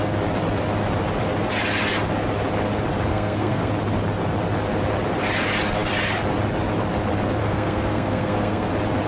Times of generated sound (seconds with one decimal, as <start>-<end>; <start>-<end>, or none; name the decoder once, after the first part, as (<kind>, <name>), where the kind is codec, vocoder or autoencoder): 3.1-3.7 (codec, SNAC); 7.4-8.7